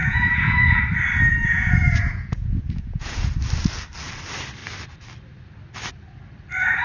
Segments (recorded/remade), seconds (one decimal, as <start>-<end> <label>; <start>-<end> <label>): 0.0-0.8 remade; 0.8-1.3 recorded; 1.3-3.3 remade; 3.3-6.8 recorded